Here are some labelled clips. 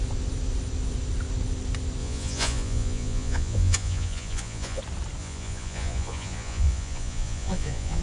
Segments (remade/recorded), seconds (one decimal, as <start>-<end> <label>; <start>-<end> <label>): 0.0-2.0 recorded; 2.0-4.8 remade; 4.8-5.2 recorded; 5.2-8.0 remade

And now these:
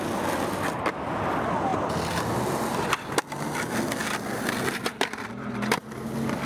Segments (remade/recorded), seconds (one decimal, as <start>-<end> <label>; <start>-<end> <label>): 0.0-1.7 recorded; 1.7-3.2 remade; 3.2-4.0 recorded; 4.0-5.5 remade; 5.5-6.5 recorded

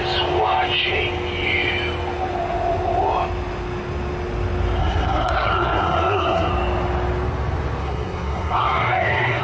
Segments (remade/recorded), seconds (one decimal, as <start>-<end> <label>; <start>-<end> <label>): 0.0-4.8 recorded; 4.8-6.5 remade; 6.5-7.8 recorded; 7.8-9.4 remade

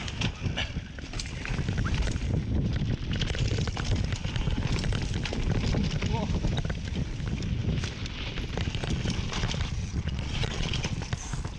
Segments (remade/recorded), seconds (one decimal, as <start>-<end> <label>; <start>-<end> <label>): 0.0-9.8 recorded; 9.8-10.8 remade; 10.8-11.6 recorded

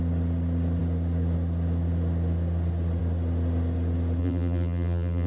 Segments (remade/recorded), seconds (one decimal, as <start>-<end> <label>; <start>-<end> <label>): 0.0-4.2 recorded; 4.2-5.3 remade

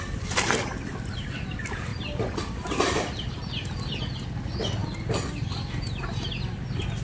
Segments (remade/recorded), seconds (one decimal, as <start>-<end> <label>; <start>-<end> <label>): 0.0-1.9 recorded; 1.9-4.0 remade; 4.0-7.0 recorded